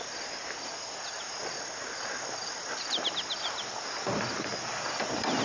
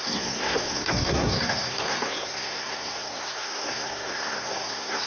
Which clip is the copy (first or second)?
second